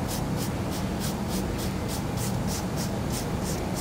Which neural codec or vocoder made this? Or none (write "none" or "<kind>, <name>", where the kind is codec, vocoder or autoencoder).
none